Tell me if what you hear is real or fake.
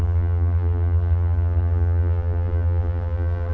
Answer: fake